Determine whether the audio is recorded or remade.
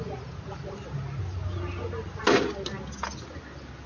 recorded